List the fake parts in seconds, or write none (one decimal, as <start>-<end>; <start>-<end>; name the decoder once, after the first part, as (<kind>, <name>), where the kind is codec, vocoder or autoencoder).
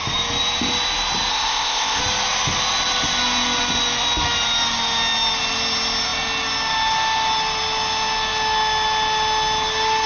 1.3-2.0 (codec, ZipCodec)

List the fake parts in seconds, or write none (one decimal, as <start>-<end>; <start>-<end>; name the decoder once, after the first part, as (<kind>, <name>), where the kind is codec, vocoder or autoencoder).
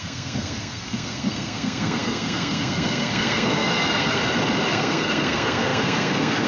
0.0-4.2 (codec, SNAC); 4.7-6.5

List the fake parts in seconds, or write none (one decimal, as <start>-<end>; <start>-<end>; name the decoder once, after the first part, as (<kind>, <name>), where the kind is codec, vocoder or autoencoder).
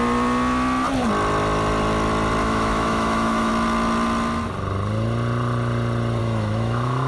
2.4-3.5 (autoencoder, DAC-VAE); 6.2-7.1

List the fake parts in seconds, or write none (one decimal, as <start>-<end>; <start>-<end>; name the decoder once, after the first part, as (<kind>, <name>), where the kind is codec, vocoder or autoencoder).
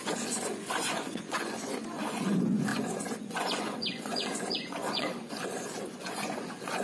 0.0-6.8 (vocoder, Vocos)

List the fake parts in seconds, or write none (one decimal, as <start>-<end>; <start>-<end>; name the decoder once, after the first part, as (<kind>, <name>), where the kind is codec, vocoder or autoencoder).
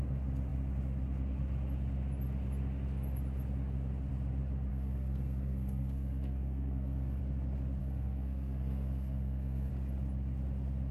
4.7-7.2 (codec, SNAC); 7.8-9.7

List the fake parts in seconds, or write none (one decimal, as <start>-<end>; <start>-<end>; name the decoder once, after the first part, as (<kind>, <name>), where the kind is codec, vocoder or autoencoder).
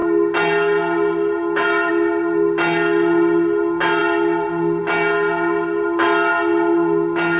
none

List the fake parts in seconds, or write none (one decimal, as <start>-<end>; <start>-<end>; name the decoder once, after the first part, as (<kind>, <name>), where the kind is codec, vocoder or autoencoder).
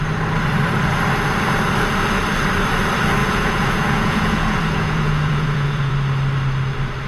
3.2-5.9 (vocoder, Vocos)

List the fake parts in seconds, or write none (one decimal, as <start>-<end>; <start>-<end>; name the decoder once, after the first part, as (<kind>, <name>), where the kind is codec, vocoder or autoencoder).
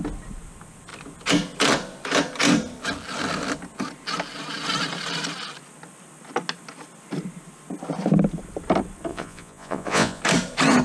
9.1-10.2 (vocoder, Vocos)